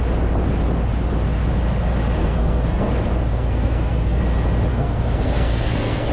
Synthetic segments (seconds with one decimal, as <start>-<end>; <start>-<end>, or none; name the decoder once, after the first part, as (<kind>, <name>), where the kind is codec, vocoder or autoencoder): 2.2-2.9 (codec, SNAC); 3.3-4.2; 4.7-6.1